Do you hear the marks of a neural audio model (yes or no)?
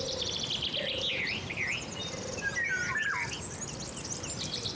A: no